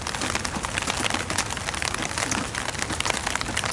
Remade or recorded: recorded